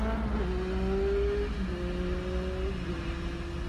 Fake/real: real